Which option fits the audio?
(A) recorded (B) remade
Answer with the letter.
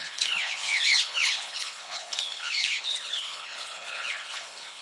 B